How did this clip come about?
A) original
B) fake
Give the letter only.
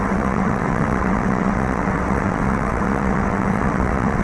B